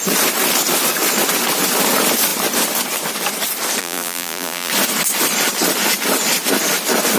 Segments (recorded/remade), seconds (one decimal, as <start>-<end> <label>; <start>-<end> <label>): 0.0-3.8 recorded; 3.8-4.7 remade; 4.7-7.2 recorded